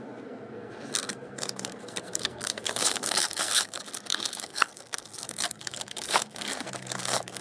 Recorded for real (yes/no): no